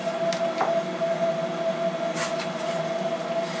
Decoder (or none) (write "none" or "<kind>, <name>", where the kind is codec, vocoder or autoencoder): none